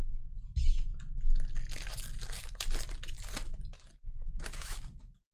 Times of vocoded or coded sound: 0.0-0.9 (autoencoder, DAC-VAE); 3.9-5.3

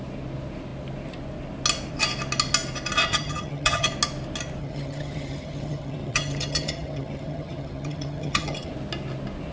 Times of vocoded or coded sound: 3.1-3.9 (vocoder, HiFi-GAN); 4.6-8.7

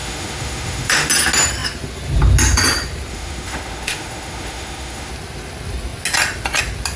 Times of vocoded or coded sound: 0.0-1.1 (autoencoder, DAC-VAE); 3.1-5.1